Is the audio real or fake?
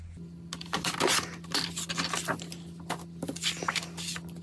real